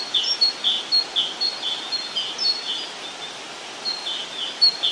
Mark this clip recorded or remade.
recorded